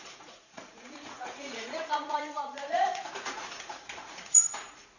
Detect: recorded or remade remade